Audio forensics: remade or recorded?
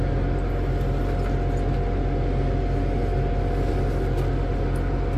recorded